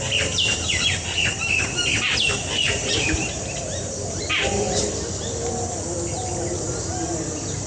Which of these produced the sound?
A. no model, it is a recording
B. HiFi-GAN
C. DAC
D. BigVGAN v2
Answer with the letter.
D